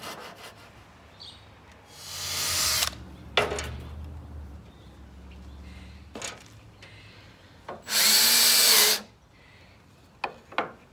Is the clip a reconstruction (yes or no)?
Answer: no